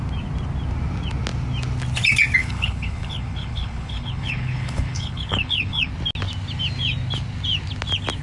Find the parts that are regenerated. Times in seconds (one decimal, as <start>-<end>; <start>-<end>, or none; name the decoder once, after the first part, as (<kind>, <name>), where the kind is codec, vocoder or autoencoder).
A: 2.4-5.9 (codec, HILCodec)